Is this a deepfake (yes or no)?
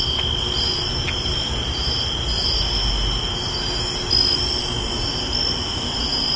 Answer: no